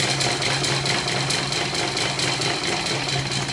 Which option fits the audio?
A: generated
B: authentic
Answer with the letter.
B